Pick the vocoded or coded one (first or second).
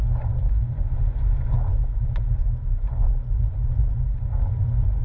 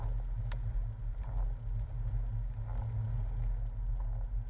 first